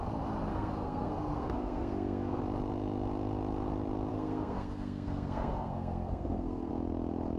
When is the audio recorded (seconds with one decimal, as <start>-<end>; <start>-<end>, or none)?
0.0-0.5; 2.4-4.1; 6.7-7.4